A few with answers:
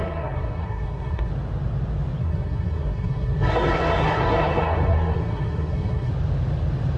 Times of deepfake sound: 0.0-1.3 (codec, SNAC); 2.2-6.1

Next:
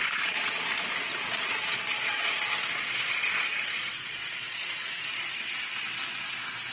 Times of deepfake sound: 0.0-0.7 (vocoder, Vocos); 1.1-4.9